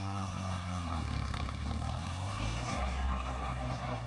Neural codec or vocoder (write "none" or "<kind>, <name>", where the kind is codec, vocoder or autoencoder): codec, SNAC